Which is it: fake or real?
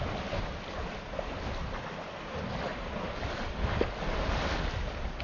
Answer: real